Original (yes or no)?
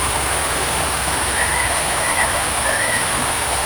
no